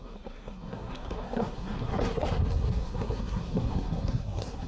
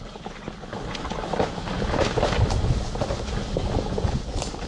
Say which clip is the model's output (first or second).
first